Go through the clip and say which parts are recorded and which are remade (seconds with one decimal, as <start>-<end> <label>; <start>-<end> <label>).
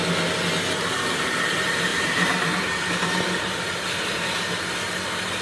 0.0-1.9 recorded; 1.9-4.7 remade; 4.7-5.4 recorded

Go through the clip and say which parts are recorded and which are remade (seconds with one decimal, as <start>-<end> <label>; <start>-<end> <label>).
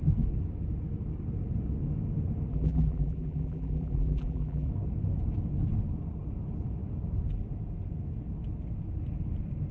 0.0-2.5 recorded; 2.5-4.7 remade; 4.7-9.7 recorded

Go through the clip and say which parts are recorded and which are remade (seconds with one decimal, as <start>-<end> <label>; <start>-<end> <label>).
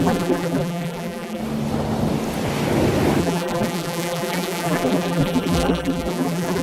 0.0-1.4 remade; 1.4-3.2 recorded; 3.2-6.6 remade